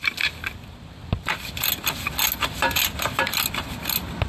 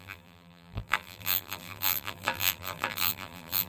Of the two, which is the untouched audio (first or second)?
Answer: first